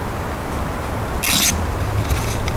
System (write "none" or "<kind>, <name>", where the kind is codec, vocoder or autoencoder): none